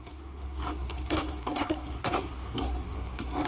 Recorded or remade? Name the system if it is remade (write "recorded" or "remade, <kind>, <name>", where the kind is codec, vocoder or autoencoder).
remade, codec, SNAC